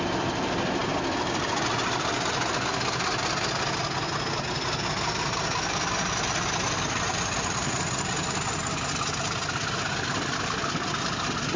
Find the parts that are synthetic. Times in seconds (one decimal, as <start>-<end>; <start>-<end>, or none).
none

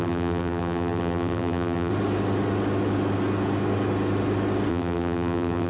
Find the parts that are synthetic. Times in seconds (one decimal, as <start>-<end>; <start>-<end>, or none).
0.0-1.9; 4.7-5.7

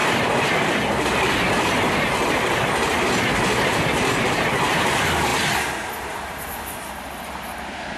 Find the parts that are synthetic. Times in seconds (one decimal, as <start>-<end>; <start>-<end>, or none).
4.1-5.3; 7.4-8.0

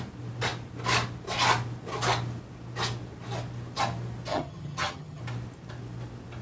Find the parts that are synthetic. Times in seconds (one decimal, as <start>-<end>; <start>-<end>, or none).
4.3-5.2

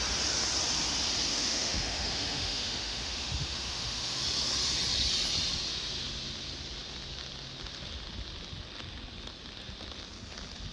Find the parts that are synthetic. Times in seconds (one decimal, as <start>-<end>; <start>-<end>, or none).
1.3-4.2

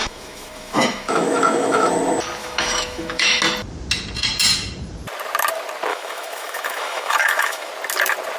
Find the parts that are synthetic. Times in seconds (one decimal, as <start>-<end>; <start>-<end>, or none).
0.0-1.9; 2.4-3.4; 5.9-7.7

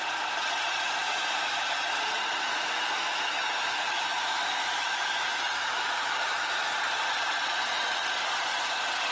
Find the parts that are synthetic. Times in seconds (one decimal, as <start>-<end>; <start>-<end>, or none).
1.0-1.8; 2.5-6.7

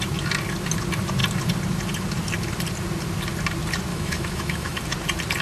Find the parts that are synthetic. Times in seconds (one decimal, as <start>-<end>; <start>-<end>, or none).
3.9-4.8